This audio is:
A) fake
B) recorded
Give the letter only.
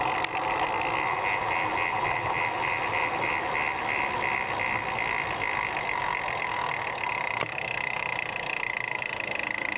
B